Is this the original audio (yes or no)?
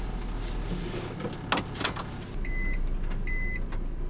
yes